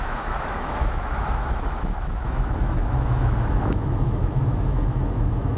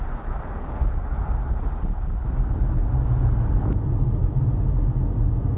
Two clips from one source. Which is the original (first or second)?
second